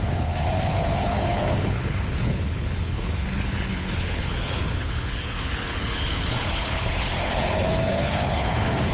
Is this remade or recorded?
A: remade